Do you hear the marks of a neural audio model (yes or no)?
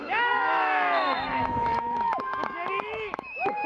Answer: yes